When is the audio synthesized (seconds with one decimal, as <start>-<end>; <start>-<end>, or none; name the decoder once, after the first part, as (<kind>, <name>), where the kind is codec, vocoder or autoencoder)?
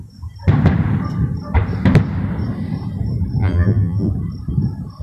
3.4-4.1 (vocoder, BigVGAN v2)